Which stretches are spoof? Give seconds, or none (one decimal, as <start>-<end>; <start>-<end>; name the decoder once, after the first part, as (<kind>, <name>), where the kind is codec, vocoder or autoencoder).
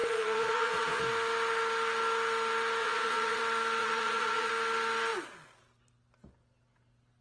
0.0-1.0 (vocoder, Vocos); 2.8-3.4; 3.8-4.5